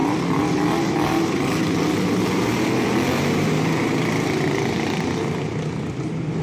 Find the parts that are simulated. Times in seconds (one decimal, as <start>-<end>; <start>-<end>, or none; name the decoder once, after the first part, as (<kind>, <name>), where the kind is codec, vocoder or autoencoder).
none